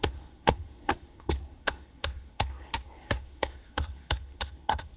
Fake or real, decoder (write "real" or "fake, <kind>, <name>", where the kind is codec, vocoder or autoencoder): fake, codec, SNAC